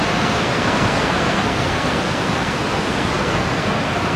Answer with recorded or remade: remade